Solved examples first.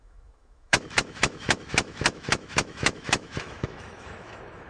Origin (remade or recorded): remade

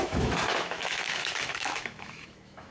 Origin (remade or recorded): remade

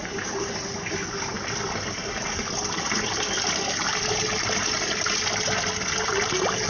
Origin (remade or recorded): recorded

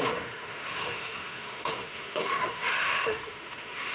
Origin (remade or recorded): remade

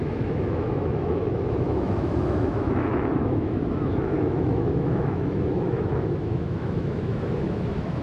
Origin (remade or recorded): remade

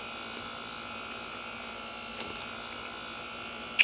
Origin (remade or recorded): recorded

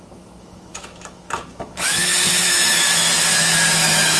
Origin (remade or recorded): remade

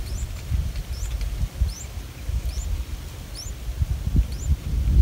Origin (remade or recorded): recorded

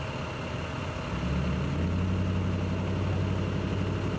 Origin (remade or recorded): recorded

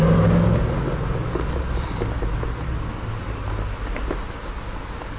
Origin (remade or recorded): recorded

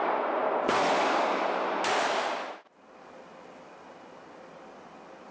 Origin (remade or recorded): recorded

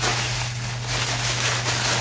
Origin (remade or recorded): recorded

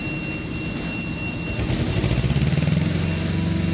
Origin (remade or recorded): recorded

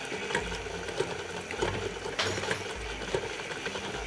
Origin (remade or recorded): recorded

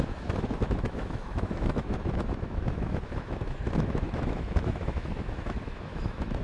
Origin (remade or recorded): remade